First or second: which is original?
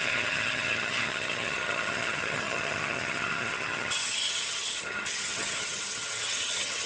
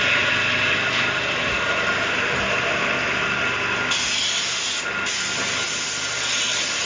second